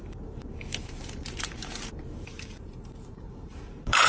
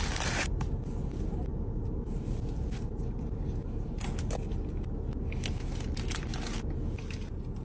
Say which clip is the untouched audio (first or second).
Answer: second